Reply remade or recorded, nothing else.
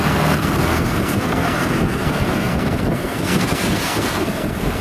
remade